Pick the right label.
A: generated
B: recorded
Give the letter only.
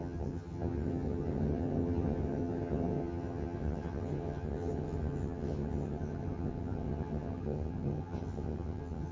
A